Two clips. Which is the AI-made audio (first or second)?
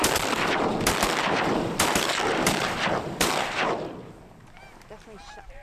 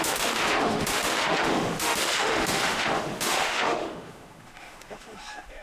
second